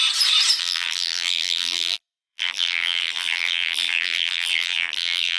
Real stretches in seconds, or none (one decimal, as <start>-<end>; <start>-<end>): 0.0-0.6